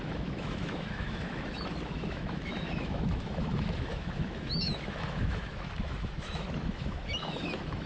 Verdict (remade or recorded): remade